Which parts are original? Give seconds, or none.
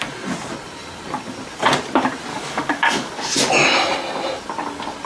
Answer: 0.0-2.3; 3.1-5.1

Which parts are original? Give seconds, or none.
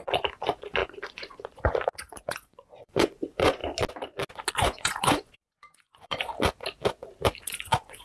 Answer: 3.6-4.5; 6.3-7.4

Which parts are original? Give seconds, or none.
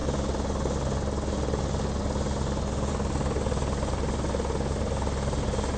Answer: 0.0-5.8